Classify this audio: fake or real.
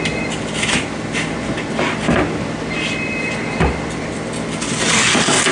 real